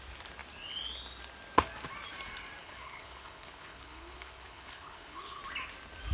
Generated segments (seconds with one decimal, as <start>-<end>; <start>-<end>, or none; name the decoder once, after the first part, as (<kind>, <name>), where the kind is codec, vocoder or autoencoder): 2.6-5.4 (codec, HILCodec)